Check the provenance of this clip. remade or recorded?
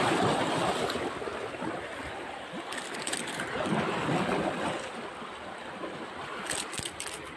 recorded